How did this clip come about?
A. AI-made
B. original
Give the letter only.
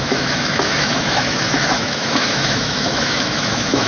A